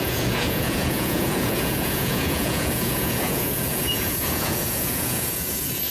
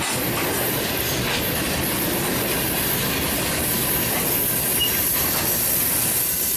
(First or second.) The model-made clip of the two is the first